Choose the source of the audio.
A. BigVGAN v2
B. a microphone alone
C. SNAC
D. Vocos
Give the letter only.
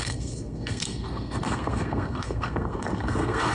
C